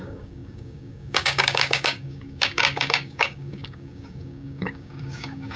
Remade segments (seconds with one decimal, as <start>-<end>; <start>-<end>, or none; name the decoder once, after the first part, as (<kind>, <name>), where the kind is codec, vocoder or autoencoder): 0.0-5.6 (codec, DAC)